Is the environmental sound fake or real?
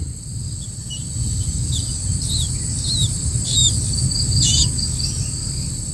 real